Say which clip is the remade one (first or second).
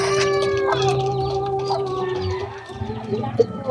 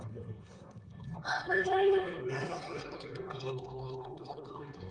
second